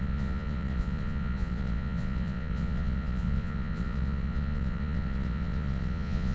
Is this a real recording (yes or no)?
no